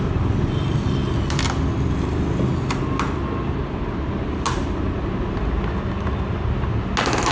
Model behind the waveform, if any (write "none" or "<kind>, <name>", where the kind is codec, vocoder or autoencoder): none